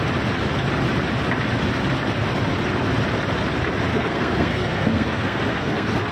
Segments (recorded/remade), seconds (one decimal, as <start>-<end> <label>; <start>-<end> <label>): 0.0-3.9 recorded; 3.9-6.1 remade